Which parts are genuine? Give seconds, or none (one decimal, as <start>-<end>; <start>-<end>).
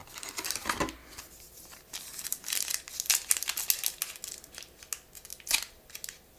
2.6-6.4